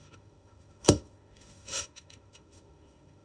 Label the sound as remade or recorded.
remade